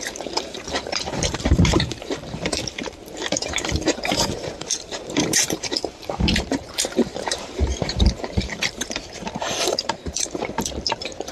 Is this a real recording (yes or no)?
no